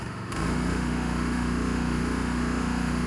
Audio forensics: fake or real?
fake